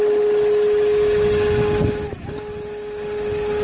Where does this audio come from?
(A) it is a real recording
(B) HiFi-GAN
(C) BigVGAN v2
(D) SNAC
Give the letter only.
A